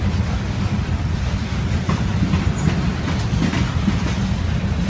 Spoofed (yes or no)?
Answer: no